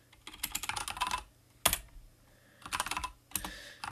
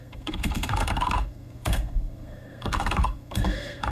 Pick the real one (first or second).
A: first